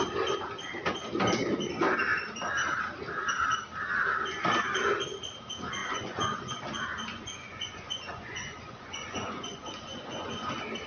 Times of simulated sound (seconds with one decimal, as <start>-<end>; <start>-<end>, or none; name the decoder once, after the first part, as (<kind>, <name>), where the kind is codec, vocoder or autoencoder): 5.8-6.6 (vocoder, Vocos); 7.1-10.5